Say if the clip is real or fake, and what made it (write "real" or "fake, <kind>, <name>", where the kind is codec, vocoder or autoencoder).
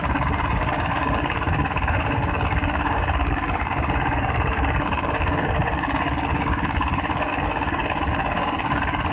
fake, codec, DAC